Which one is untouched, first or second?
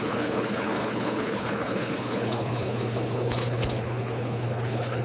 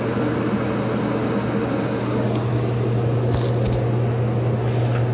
second